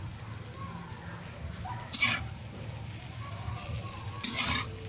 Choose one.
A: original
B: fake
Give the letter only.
A